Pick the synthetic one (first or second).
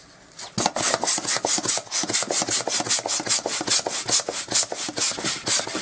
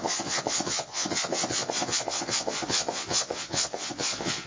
second